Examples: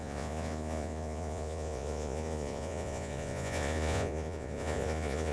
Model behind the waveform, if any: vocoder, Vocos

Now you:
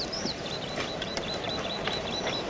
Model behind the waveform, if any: vocoder, BigVGAN v2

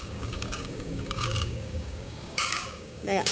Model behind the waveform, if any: codec, DAC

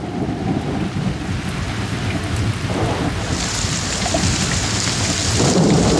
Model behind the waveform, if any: vocoder, BigVGAN v2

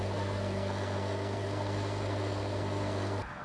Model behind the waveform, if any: codec, SNAC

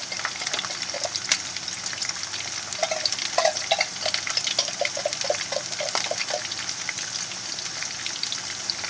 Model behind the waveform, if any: none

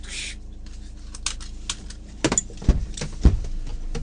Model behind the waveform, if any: none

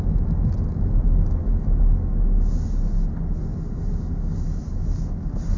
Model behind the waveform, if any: none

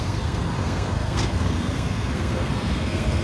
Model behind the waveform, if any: codec, SNAC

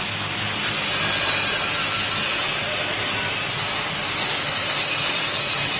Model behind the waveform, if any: none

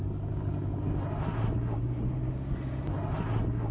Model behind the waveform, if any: none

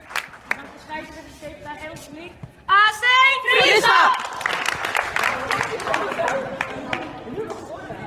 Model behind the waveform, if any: none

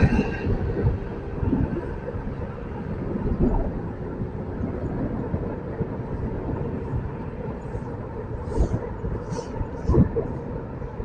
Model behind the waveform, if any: none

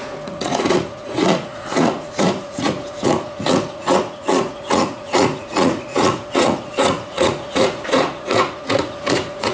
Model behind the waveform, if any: vocoder, Vocos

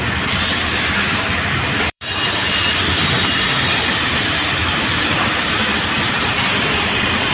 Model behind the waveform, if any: vocoder, BigVGAN v2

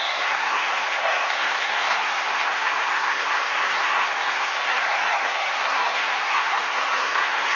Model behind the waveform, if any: codec, SNAC